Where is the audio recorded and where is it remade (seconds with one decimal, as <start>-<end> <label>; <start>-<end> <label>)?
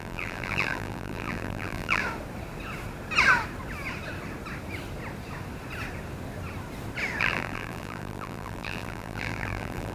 0.0-2.0 remade; 2.0-7.2 recorded; 7.2-9.9 remade